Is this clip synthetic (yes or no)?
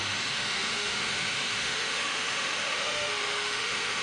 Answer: yes